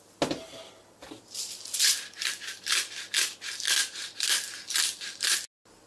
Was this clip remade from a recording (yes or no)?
no